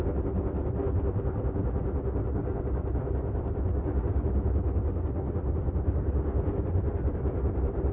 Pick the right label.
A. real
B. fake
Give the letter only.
B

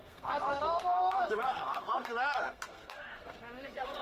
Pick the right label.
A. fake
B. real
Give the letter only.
A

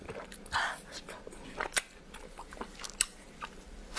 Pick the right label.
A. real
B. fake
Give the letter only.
A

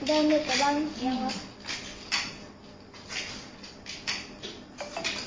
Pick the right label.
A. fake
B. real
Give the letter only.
B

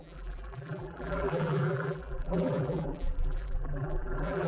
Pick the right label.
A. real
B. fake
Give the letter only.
B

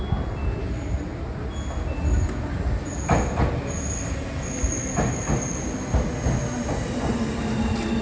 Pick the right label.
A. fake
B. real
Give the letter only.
B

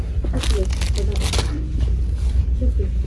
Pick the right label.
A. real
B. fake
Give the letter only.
A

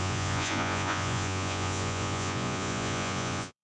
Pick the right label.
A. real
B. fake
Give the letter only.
B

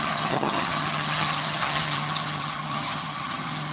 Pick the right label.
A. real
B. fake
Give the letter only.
B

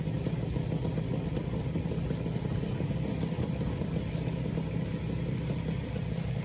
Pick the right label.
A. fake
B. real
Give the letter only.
B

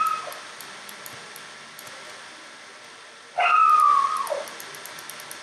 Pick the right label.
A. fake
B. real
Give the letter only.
B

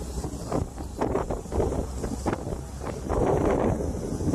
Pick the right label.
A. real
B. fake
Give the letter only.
A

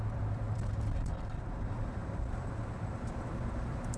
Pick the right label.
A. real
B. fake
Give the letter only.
B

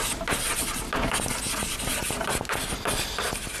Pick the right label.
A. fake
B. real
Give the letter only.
B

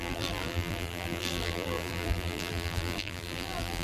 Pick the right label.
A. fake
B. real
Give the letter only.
A